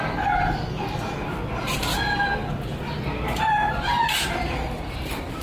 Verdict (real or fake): real